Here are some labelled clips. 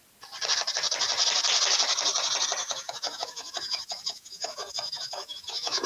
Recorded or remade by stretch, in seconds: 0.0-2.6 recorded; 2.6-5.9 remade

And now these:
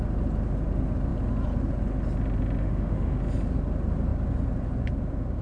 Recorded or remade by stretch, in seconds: 0.0-2.6 recorded; 2.6-3.2 remade; 3.2-5.4 recorded

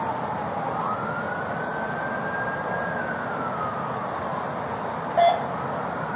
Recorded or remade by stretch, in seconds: 0.0-6.2 recorded

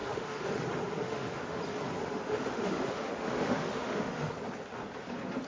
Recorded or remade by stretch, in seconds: 0.0-0.6 remade; 0.6-1.0 recorded; 1.0-1.6 remade; 1.6-2.0 recorded; 2.0-4.3 remade; 4.3-5.5 recorded

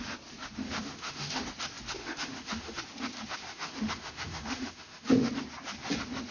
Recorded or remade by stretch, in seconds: 0.0-0.6 recorded; 0.6-1.4 remade; 1.4-2.0 recorded; 2.0-2.8 remade; 2.8-3.4 recorded; 3.4-5.3 remade; 5.3-6.3 recorded